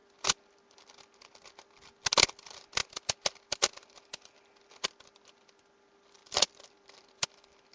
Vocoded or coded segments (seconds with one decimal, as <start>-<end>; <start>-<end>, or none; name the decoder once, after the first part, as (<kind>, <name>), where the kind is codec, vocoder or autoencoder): 2.8-4.3 (vocoder, BigVGAN v2); 6.2-7.7